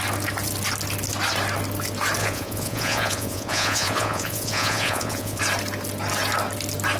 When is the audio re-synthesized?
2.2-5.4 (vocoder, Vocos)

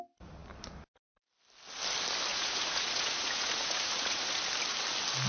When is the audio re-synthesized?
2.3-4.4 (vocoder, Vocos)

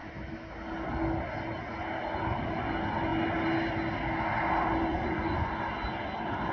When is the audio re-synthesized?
4.9-5.5 (vocoder, Vocos)

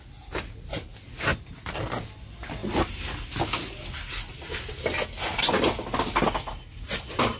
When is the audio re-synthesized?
none

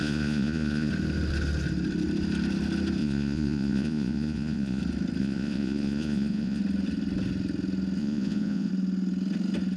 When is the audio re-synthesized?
0.0-0.9 (vocoder, Vocos); 3.0-4.8; 5.2-6.6; 8.0-8.7

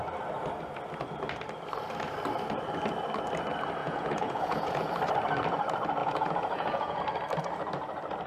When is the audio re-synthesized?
3.8-5.0 (vocoder, Vocos); 6.0-7.0